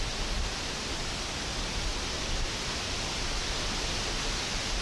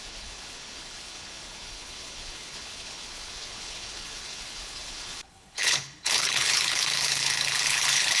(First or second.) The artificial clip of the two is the second